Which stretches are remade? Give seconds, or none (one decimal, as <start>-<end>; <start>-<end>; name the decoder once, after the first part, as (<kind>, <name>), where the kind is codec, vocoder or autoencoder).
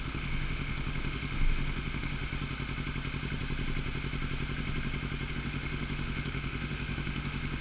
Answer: 0.0-2.3 (autoencoder, DAC-VAE); 5.3-7.6